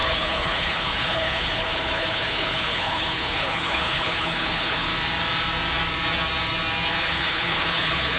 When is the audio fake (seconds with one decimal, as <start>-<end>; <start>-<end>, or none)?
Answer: 0.0-4.9; 7.0-8.2